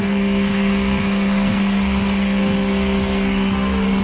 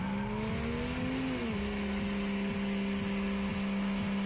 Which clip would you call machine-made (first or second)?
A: first